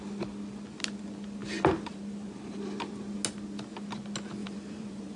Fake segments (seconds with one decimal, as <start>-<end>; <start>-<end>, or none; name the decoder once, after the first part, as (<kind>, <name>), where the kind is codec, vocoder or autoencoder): 1.4-2.6 (vocoder, BigVGAN v2); 4.4-5.2